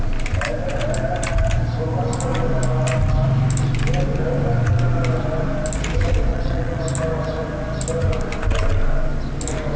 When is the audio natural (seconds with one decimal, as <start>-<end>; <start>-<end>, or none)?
0.0-6.3; 6.8-9.8